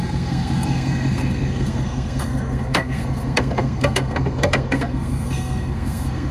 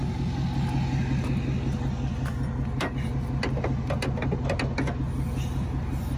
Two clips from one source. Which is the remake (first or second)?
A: first